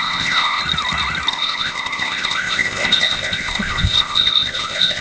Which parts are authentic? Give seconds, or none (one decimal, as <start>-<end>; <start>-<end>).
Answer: 0.6-1.3